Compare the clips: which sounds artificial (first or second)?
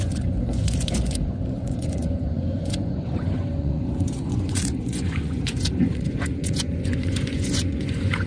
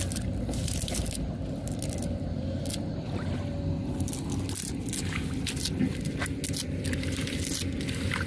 first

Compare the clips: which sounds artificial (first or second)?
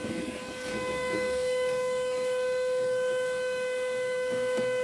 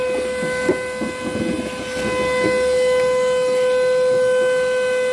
first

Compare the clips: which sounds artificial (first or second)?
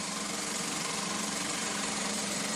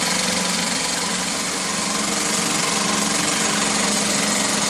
first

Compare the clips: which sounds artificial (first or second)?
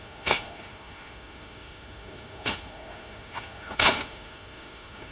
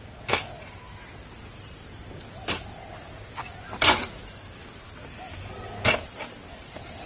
first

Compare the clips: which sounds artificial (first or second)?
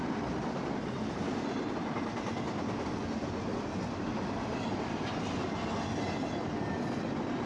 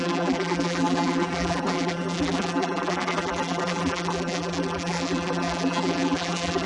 second